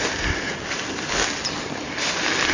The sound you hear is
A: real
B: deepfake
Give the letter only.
A